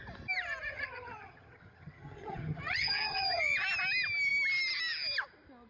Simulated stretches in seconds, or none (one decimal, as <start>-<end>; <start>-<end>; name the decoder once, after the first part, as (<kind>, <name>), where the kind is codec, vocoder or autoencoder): 0.7-3.4 (vocoder, HiFi-GAN)